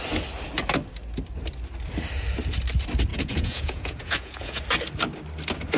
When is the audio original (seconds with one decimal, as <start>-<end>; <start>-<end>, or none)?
0.0-3.1; 4.6-5.8